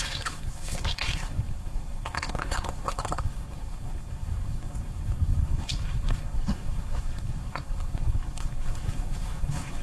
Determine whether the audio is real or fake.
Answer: fake